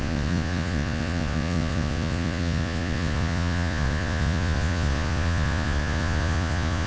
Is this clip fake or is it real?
fake